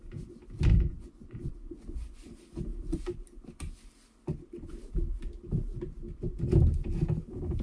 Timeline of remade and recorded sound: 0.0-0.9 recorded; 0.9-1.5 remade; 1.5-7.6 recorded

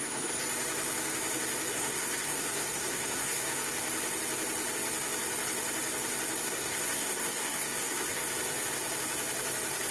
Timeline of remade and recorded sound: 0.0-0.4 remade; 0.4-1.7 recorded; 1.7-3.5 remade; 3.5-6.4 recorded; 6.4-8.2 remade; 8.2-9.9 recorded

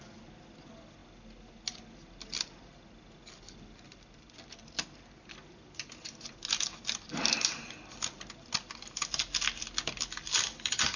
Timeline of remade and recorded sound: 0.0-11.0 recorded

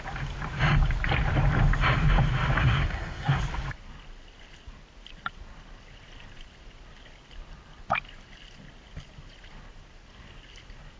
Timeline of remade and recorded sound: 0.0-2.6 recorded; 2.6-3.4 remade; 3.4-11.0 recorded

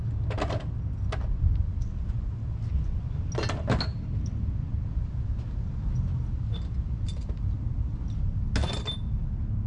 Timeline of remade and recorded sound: 0.0-9.7 recorded

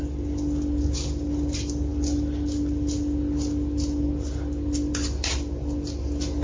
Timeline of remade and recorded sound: 0.0-6.4 recorded